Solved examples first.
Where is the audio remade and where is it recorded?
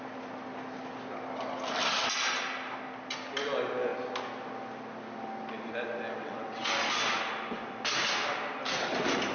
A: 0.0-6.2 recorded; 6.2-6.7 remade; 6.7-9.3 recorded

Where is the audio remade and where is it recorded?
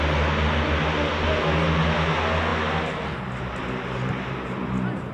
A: 0.0-5.1 recorded